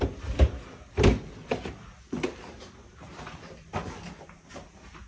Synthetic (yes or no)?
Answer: no